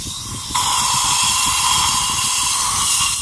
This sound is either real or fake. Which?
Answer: real